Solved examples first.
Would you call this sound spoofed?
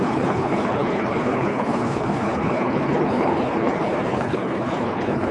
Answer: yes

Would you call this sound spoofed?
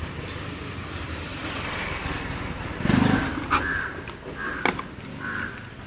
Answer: no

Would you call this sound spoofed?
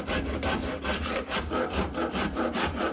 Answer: no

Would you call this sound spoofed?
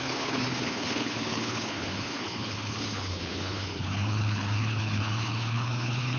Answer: yes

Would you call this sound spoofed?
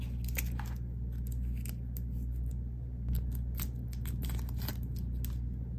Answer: no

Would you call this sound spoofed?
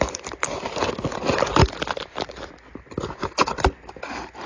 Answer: no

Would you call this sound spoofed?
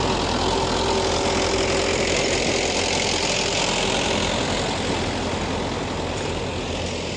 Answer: no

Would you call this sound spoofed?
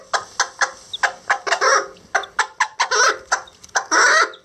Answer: no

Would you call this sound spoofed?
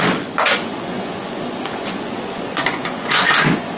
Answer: yes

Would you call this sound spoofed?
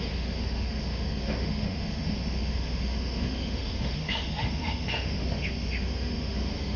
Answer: yes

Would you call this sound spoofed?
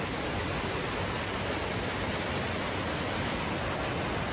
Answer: no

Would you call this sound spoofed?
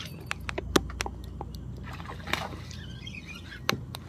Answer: no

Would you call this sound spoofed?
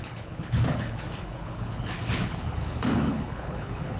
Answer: yes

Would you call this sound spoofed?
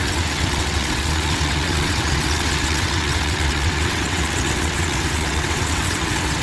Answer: yes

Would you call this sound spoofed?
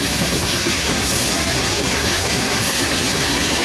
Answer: yes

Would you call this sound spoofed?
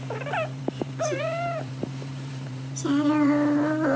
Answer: yes